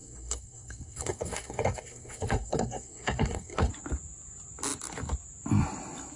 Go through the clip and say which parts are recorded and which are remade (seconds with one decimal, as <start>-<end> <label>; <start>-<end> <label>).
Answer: 0.0-3.7 remade; 3.7-6.2 recorded